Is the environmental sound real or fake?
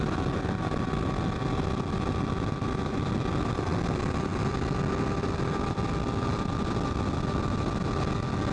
real